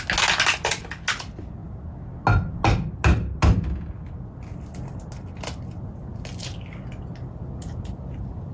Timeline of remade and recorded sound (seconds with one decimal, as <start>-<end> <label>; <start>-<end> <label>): 0.0-8.5 recorded